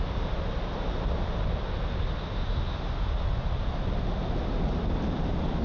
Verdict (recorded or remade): recorded